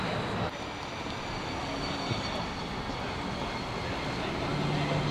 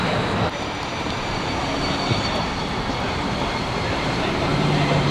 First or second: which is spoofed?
second